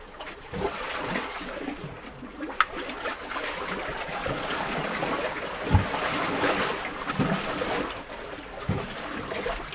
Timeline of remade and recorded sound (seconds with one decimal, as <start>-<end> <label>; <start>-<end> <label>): 0.0-0.8 recorded; 0.8-1.7 remade; 1.7-3.9 recorded; 3.9-5.1 remade; 5.1-9.7 recorded